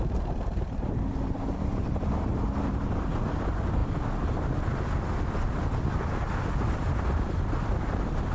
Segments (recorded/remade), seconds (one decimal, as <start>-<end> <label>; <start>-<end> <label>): 0.0-8.3 recorded